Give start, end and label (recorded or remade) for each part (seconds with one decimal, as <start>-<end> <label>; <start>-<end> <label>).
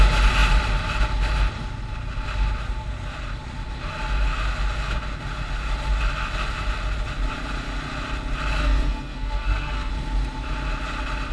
0.0-8.6 recorded; 8.6-9.9 remade; 9.9-11.3 recorded